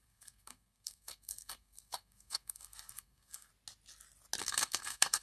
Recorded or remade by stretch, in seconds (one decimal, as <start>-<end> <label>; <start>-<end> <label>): 0.0-3.5 remade; 3.5-4.4 recorded; 4.4-5.2 remade